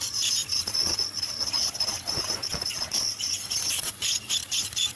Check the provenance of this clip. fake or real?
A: fake